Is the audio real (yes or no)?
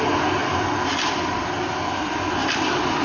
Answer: yes